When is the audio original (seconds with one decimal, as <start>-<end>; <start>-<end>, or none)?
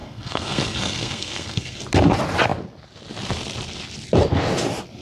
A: 1.8-5.0